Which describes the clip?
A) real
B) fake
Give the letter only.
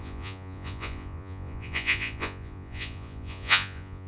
B